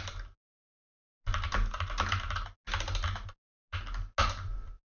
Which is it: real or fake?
real